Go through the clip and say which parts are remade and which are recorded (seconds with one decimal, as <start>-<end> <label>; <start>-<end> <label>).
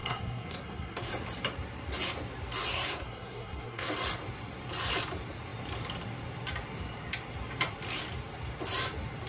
0.0-1.1 remade; 1.1-2.7 recorded; 2.7-3.9 remade; 3.9-9.3 recorded